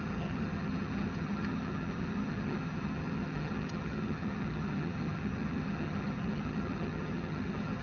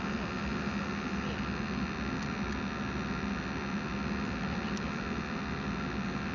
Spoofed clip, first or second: first